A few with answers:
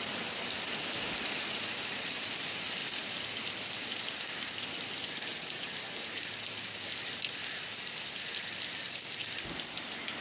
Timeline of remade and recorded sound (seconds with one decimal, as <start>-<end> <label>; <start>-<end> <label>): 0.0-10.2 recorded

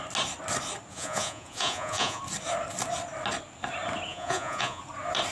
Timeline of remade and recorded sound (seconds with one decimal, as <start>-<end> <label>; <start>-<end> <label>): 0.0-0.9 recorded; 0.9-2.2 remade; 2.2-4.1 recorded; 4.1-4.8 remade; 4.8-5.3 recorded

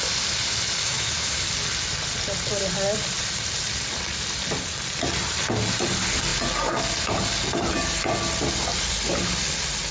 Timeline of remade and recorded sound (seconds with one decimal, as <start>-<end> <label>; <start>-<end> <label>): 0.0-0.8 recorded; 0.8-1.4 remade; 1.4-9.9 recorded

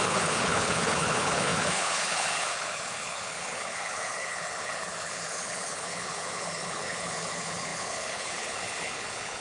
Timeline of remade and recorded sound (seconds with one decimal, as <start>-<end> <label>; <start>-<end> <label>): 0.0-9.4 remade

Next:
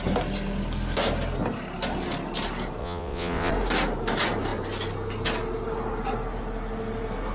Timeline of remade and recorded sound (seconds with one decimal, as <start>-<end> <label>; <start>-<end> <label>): 0.0-2.8 recorded; 2.8-3.5 remade; 3.5-7.3 recorded

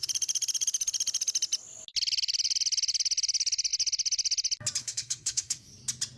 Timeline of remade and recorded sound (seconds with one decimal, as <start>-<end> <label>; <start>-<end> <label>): 0.0-4.8 recorded; 4.8-5.7 remade; 5.7-6.2 recorded

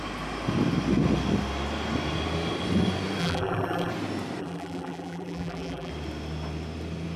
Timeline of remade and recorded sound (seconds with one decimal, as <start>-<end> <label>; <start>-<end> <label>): 0.0-3.2 recorded; 3.2-3.9 remade; 3.9-4.4 recorded; 4.4-5.9 remade; 5.9-7.2 recorded